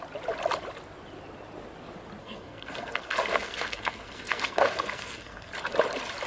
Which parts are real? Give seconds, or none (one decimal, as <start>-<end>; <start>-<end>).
0.0-2.2; 5.5-6.3